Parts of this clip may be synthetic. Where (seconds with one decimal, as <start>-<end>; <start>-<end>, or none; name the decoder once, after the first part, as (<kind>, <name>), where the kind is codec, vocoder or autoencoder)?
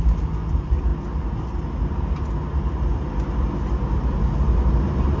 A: 0.0-0.9 (vocoder, BigVGAN v2); 4.0-5.2